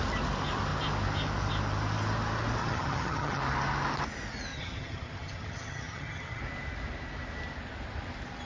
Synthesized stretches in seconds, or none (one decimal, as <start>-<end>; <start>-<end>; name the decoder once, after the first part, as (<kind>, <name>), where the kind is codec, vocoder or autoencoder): 2.6-3.4 (vocoder, HiFi-GAN); 4.5-6.4